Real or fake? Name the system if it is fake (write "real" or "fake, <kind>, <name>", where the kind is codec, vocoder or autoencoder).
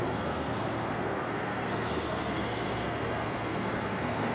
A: fake, codec, SNAC